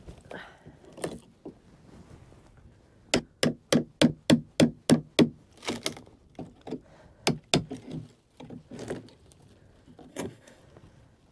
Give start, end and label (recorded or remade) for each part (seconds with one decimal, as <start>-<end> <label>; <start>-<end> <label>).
0.0-10.1 recorded; 10.1-10.6 remade; 10.6-11.3 recorded